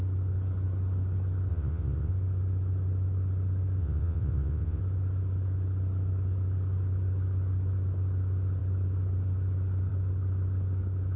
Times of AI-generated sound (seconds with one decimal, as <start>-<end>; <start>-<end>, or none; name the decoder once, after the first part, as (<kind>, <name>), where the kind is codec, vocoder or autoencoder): 1.5-2.1 (vocoder, WaveNeXt); 3.8-4.8